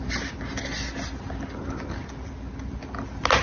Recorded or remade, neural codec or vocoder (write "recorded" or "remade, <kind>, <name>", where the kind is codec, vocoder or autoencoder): recorded